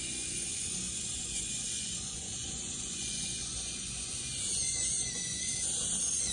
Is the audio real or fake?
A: fake